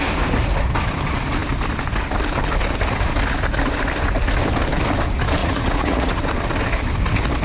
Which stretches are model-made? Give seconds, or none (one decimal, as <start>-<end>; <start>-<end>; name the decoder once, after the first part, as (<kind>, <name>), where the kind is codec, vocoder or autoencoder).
5.4-6.2 (vocoder, Vocos)